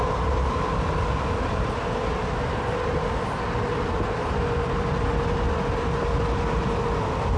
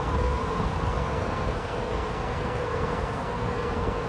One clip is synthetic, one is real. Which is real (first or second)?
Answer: first